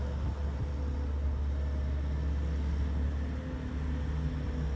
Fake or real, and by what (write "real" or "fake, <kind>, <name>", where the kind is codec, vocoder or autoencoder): real